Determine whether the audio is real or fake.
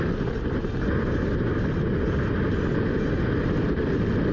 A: real